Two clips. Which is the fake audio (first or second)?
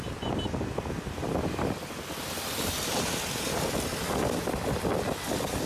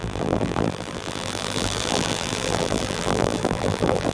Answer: second